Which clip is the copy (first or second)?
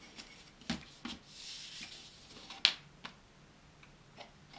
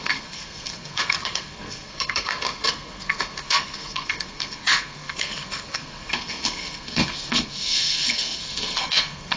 second